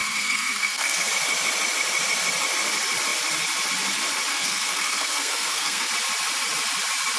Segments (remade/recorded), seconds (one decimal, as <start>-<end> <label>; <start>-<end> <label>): 0.0-1.1 remade; 1.1-4.3 recorded; 4.3-5.9 remade; 5.9-7.2 recorded